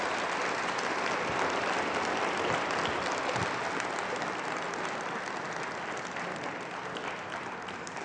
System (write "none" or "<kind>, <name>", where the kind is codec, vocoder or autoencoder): none